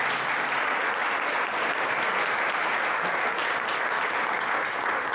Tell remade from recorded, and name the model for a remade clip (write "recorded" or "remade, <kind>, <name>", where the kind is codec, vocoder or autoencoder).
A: recorded